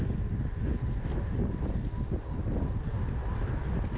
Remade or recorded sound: recorded